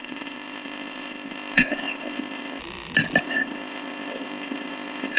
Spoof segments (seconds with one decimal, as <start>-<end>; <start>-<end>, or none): 0.0-2.6; 3.2-5.2